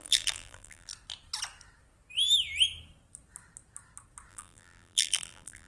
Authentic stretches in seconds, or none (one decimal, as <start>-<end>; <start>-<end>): 0.9-4.3